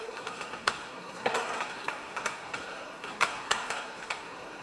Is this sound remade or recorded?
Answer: remade